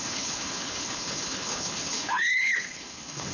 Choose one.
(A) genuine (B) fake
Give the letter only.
B